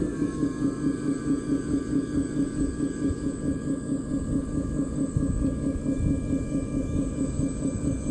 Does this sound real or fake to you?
fake